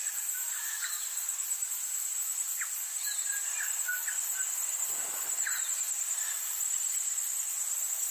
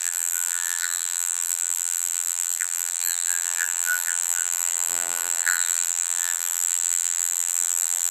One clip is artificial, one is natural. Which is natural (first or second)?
first